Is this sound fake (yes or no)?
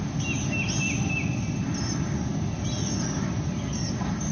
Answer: no